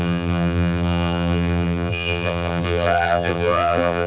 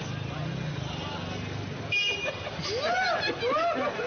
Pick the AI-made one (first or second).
first